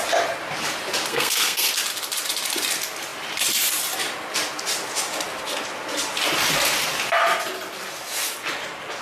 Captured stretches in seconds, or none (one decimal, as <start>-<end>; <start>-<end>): 0.0-1.1; 1.7-9.0